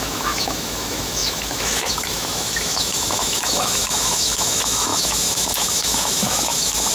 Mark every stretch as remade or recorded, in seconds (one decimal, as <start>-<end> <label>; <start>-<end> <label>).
0.0-6.9 remade